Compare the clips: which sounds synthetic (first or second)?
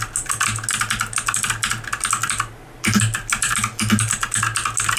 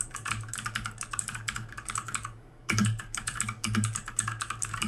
second